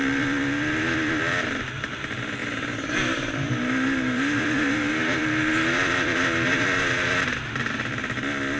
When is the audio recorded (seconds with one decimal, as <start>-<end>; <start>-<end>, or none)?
0.0-2.4; 7.1-8.6